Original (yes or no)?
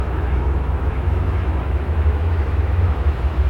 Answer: no